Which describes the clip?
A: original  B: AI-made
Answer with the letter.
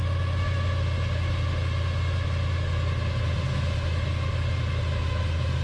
A